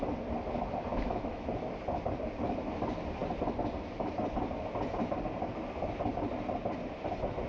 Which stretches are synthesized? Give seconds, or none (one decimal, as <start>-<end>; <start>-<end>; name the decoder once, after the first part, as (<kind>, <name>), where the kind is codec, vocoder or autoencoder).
0.9-1.5 (autoencoder, DAC-VAE)